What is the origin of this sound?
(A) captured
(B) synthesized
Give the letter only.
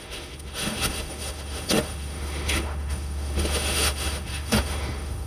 B